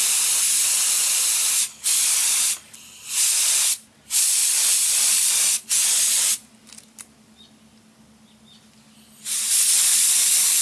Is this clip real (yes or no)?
yes